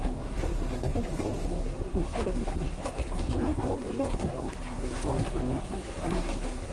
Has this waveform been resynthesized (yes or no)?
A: yes